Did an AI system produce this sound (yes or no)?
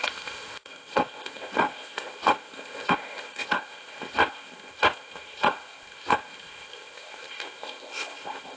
yes